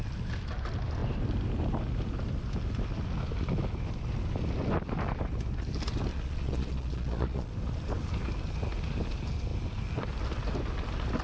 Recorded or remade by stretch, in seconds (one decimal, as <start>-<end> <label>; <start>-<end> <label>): 0.0-6.1 recorded; 6.1-7.5 remade; 7.5-11.2 recorded